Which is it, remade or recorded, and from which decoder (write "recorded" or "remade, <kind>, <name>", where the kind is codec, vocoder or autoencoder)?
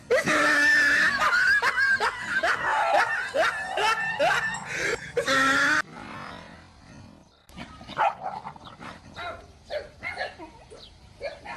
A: recorded